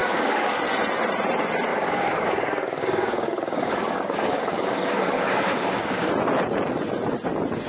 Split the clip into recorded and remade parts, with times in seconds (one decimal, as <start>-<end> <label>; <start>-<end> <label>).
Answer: 0.0-0.6 remade; 0.6-1.7 recorded; 1.7-6.1 remade; 6.1-7.7 recorded

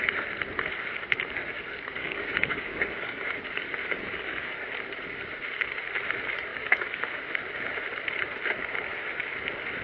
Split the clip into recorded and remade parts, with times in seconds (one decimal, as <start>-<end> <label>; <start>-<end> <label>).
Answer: 0.0-2.0 recorded; 2.0-3.4 remade; 3.4-3.8 recorded; 3.8-4.5 remade; 4.5-6.5 recorded; 6.5-7.2 remade; 7.2-9.8 recorded

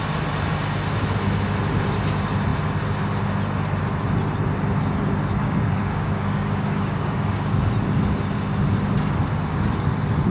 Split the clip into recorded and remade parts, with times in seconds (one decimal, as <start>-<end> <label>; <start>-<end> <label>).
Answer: 0.0-5.4 recorded; 5.4-7.7 remade; 7.7-10.3 recorded

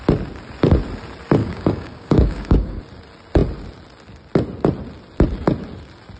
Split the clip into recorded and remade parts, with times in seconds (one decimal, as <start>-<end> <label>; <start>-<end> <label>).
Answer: 0.0-1.4 recorded; 1.4-2.8 remade; 2.8-6.2 recorded